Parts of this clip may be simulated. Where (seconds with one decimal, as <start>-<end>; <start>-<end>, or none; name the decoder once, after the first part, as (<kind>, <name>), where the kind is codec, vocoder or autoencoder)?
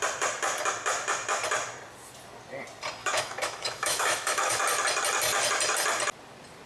3.0-4.6 (autoencoder, DAC-VAE)